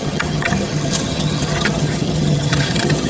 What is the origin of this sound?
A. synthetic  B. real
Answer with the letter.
A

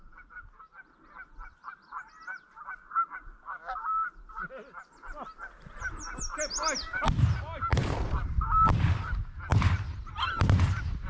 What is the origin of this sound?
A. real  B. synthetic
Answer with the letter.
A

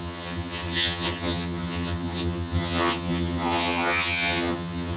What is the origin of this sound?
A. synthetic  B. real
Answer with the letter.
A